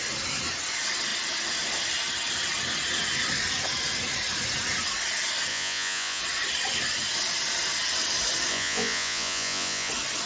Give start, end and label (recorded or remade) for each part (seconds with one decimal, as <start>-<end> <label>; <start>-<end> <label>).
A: 0.0-5.5 recorded; 5.5-6.2 remade; 6.2-8.5 recorded; 8.5-9.9 remade; 9.9-10.3 recorded